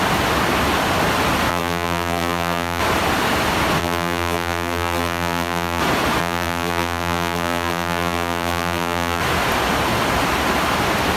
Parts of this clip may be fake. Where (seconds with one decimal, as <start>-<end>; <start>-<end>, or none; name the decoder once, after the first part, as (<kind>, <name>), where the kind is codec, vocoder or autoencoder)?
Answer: 1.5-2.8 (vocoder, BigVGAN v2); 3.8-5.8; 6.2-9.2